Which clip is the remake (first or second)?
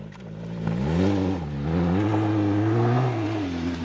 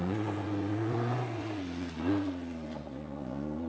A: second